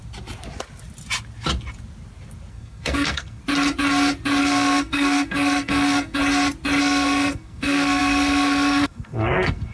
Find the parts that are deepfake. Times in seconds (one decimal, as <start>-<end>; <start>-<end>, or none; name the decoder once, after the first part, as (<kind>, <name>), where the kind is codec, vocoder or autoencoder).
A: 2.5-3.4 (codec, SNAC); 4.4-6.2; 6.8-9.7